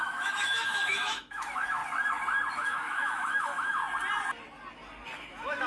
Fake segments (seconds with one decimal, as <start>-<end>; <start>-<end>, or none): 0.0-1.8; 2.5-3.8; 5.3-5.7